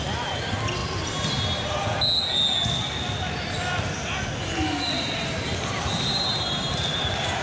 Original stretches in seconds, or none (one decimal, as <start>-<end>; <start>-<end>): 0.0-7.4